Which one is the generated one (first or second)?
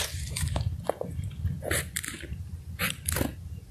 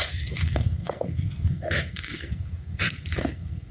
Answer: second